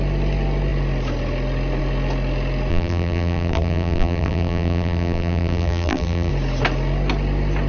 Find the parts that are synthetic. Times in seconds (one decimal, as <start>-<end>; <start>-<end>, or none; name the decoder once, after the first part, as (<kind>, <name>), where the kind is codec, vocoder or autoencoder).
2.7-6.3 (vocoder, BigVGAN v2)